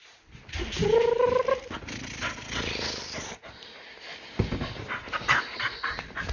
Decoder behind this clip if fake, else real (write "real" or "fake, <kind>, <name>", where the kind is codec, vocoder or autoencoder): real